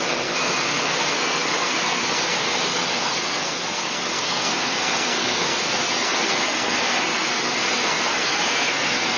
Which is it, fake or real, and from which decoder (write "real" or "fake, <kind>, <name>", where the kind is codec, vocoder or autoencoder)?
fake, codec, SNAC